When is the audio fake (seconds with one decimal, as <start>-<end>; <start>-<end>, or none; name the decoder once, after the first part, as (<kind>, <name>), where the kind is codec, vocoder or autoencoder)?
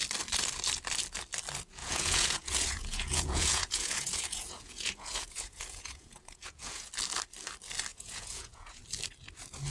1.8-6.9 (vocoder, Vocos); 7.9-8.8